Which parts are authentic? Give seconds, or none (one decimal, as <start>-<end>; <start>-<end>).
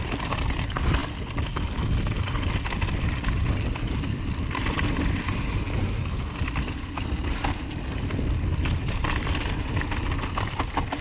0.0-6.6; 7.3-11.0